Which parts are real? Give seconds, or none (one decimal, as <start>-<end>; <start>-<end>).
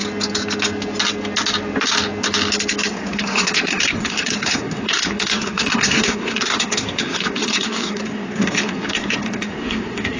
0.0-2.9